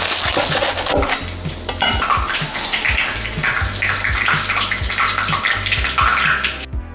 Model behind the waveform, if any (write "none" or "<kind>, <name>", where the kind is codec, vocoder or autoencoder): none